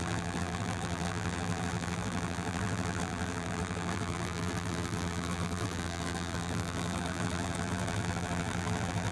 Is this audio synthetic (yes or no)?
yes